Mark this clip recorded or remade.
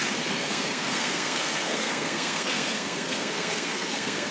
remade